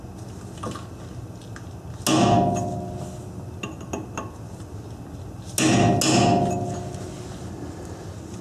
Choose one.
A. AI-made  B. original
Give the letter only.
B